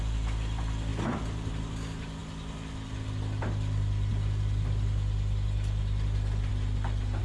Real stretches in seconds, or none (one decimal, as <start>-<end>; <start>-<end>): 0.0-0.9; 1.6-7.2